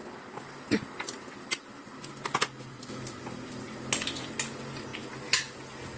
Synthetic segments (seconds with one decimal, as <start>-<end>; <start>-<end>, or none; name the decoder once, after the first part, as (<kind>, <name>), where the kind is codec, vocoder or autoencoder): none